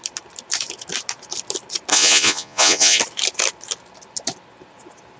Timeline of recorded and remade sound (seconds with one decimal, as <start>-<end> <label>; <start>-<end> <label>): 0.0-1.9 recorded; 1.9-3.0 remade; 3.0-5.2 recorded